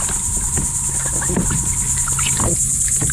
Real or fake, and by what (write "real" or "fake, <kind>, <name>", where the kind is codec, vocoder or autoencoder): real